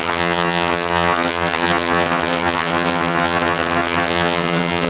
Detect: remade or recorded remade